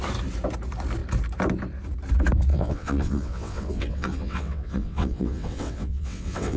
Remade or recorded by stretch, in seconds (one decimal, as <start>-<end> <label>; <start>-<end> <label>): 0.0-2.5 recorded; 2.5-6.6 remade

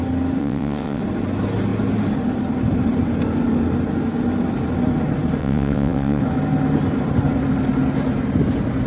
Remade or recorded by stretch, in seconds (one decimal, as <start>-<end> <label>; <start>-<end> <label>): 0.0-0.4 recorded; 0.4-1.0 remade; 1.0-5.4 recorded; 5.4-6.2 remade; 6.2-8.9 recorded